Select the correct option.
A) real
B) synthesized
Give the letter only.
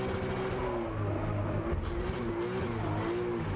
A